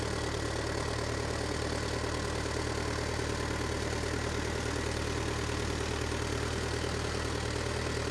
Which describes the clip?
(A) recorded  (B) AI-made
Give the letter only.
A